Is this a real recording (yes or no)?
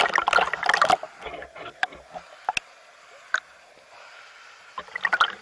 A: yes